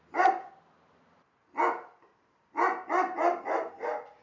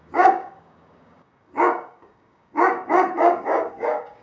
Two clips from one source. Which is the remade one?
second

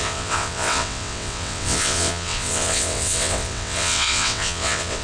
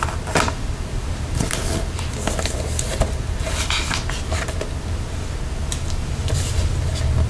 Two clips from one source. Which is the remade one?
first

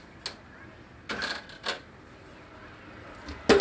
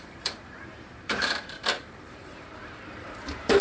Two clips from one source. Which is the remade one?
second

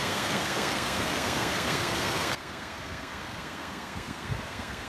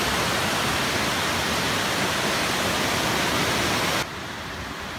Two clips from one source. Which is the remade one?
first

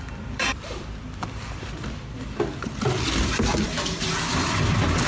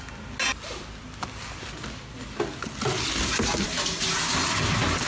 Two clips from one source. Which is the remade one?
first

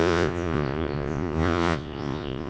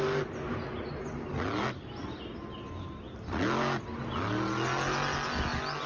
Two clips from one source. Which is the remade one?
first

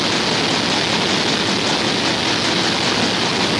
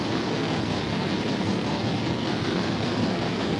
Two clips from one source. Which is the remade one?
second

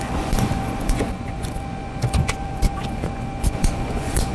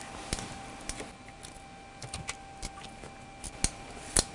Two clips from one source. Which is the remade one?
first